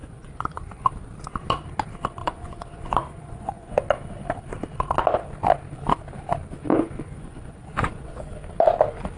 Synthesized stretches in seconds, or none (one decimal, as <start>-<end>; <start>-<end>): 0.0-0.9; 2.2-3.8; 6.7-8.3